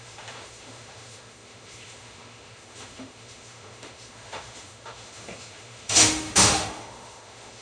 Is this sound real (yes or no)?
no